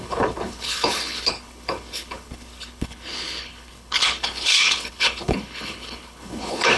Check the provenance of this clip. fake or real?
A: fake